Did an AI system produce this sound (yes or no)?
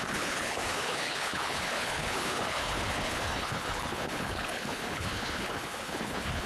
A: yes